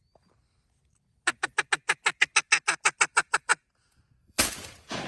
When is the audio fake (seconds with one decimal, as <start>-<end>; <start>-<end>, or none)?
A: 3.1-5.1